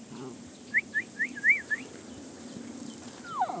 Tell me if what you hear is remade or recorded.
recorded